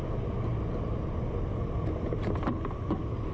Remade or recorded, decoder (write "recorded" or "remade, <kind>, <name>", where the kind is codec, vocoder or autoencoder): recorded